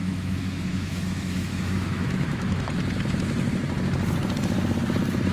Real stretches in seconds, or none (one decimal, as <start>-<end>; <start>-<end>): 2.6-5.3